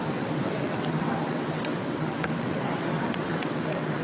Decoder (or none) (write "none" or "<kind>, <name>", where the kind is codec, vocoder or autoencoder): vocoder, WaveNeXt